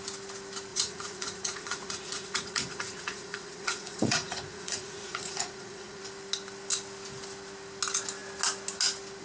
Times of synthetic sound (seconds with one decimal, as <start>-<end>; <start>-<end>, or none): 0.7-6.0